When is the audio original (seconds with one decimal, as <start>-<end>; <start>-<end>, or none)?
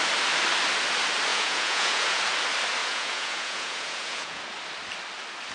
0.0-1.3; 2.2-2.8; 4.4-5.5